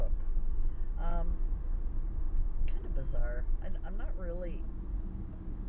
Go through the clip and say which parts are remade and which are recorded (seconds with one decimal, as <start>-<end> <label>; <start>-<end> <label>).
0.0-1.3 recorded; 1.3-1.9 remade; 1.9-5.7 recorded